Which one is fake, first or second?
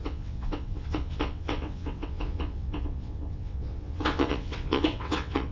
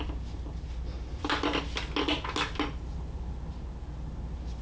first